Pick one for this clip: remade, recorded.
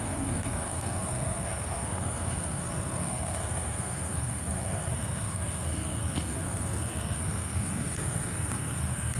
remade